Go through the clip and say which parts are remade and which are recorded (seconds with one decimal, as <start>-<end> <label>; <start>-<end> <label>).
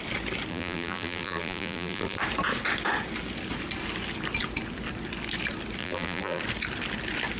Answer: 0.0-0.5 recorded; 0.5-2.2 remade; 2.2-5.8 recorded; 5.8-6.4 remade; 6.4-7.4 recorded